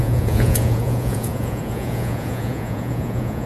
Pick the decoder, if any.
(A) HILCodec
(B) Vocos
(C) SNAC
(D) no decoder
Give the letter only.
B